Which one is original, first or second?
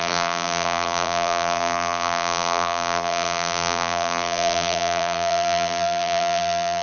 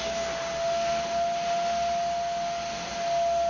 second